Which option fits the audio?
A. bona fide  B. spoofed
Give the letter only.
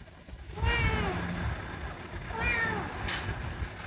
A